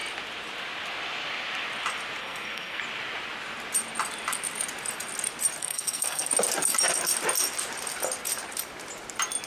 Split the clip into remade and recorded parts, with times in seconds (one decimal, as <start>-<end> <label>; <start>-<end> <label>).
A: 0.0-2.2 recorded; 2.2-2.8 remade; 2.8-5.6 recorded; 5.6-6.3 remade; 6.3-9.5 recorded